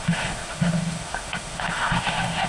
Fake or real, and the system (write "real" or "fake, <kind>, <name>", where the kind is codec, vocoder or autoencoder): fake, autoencoder, DAC-VAE